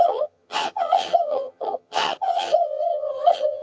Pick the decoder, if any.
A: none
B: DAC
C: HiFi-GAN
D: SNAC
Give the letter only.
C